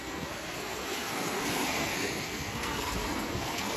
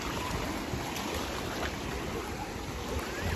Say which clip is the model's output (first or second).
first